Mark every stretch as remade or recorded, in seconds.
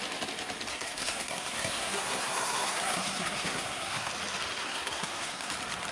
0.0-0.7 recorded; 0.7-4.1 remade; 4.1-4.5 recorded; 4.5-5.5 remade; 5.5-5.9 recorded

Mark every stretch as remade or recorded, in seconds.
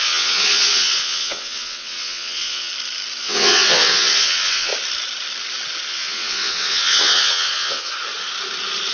0.0-2.7 remade; 2.7-3.2 recorded; 3.2-4.7 remade; 4.7-5.9 recorded; 5.9-7.9 remade; 7.9-8.9 recorded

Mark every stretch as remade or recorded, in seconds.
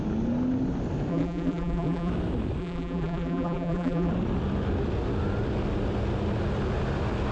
0.0-1.1 recorded; 1.1-2.1 remade; 2.1-2.6 recorded; 2.6-4.1 remade; 4.1-7.3 recorded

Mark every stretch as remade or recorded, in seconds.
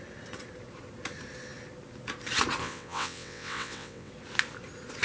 0.0-2.6 recorded; 2.6-4.1 remade; 4.1-5.0 recorded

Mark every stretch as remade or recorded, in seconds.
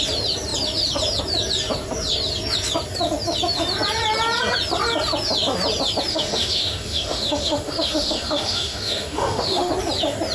0.0-6.1 recorded; 6.1-9.7 remade; 9.7-10.3 recorded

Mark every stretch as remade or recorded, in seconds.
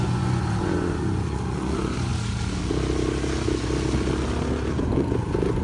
0.0-2.1 remade; 2.1-4.7 recorded; 4.7-5.6 remade